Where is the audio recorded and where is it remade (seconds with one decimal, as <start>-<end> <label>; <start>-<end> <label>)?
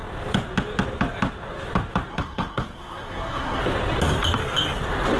0.0-2.1 recorded; 2.1-3.6 remade; 3.6-5.2 recorded